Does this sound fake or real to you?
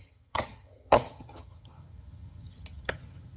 fake